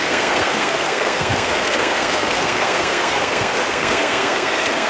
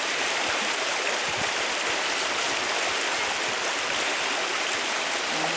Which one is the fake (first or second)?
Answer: first